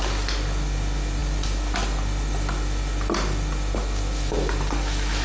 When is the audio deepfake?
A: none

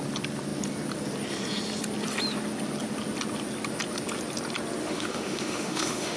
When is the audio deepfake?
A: 4.8-6.2 (autoencoder, DAC-VAE)

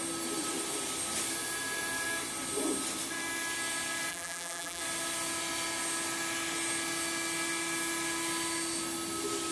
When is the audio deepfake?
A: 4.1-4.8 (vocoder, BigVGAN v2)

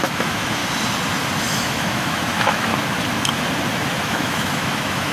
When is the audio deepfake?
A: 0.0-0.6 (autoencoder, DAC-VAE); 1.5-2.7; 4.0-5.1